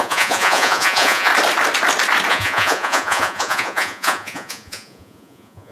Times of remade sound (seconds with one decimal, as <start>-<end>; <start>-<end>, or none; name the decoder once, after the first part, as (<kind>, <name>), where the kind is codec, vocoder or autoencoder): 0.0-1.3 (vocoder, Vocos); 2.3-5.7